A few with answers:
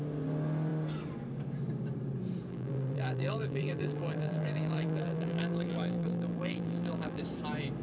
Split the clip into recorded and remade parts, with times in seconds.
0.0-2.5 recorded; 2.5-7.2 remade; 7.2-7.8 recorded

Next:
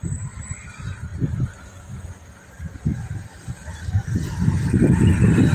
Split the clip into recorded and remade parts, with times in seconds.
0.0-5.5 recorded